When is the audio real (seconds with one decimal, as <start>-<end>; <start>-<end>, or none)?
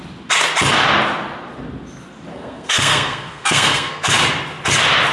0.0-2.3; 4.1-5.1